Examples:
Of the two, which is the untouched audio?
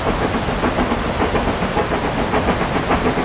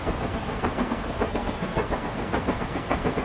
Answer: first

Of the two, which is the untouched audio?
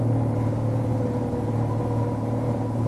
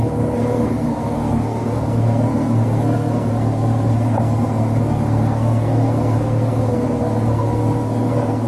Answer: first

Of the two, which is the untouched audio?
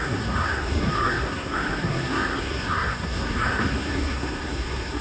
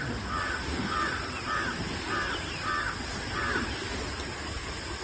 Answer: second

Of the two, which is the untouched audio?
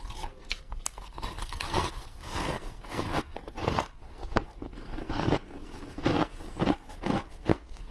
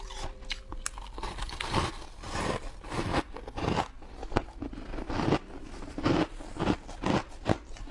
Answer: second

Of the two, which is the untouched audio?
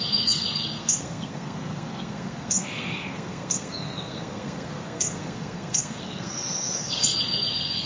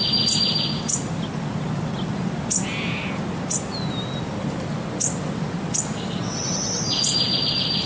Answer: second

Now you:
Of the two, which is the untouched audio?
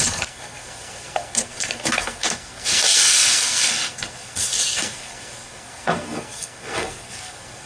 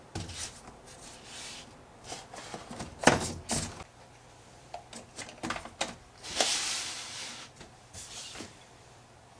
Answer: second